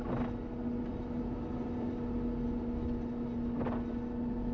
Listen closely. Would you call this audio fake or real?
real